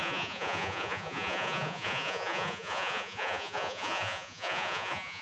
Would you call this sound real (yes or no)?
no